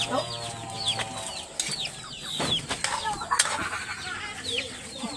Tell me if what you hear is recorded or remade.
recorded